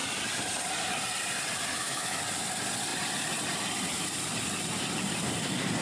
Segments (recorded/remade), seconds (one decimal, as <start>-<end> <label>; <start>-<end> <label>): 0.0-1.7 recorded; 1.7-2.2 remade; 2.2-5.8 recorded